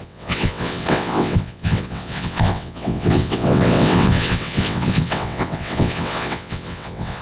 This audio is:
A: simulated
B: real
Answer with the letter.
A